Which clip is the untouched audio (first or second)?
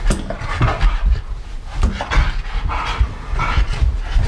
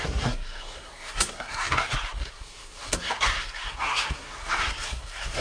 first